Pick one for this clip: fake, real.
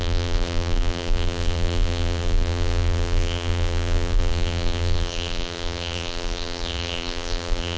fake